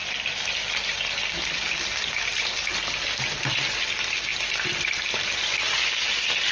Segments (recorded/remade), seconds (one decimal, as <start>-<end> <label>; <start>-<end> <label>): 0.0-6.5 recorded